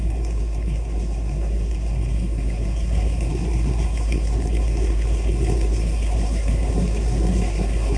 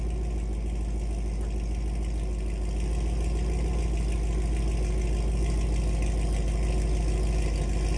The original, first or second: second